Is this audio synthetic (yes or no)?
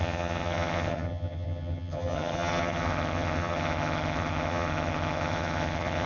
yes